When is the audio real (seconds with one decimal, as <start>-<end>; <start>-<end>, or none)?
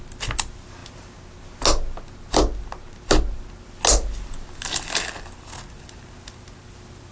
0.0-7.1